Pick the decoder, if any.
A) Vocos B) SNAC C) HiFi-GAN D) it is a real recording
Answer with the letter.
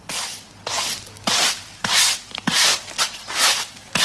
D